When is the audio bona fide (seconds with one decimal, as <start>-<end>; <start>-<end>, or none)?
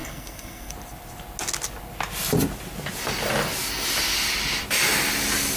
0.7-5.6